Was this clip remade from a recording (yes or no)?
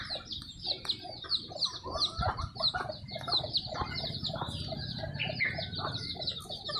yes